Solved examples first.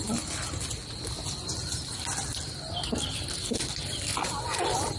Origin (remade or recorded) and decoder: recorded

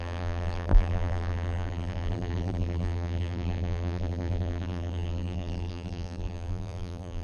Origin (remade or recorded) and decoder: remade, vocoder, BigVGAN v2